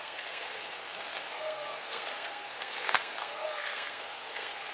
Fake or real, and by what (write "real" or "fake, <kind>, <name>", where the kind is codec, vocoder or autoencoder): fake, codec, SNAC